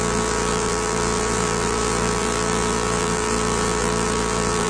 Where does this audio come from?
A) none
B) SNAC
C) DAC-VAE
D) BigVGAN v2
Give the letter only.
D